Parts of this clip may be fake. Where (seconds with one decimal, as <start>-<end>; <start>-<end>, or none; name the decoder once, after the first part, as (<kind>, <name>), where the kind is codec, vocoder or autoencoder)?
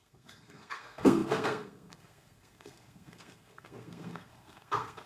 0.0-5.1 (codec, SNAC)